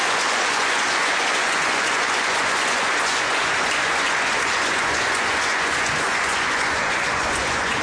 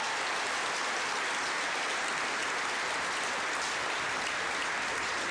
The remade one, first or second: first